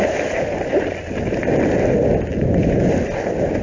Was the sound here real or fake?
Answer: real